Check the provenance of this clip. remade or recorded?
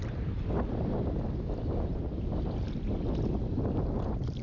recorded